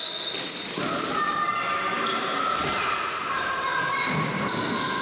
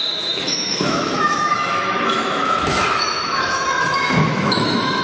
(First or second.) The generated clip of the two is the second